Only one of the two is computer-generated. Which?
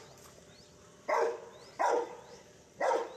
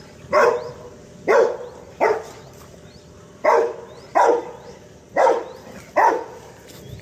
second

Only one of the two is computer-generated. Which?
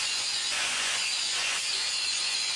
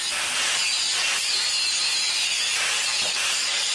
first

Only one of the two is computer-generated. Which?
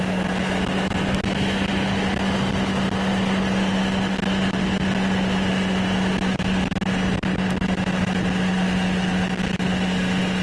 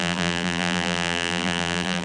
second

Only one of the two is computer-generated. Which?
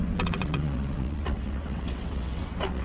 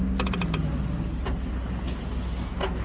first